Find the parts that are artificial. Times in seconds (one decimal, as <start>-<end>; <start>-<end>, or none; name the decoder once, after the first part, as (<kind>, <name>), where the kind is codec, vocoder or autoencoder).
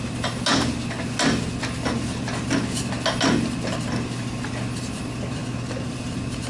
none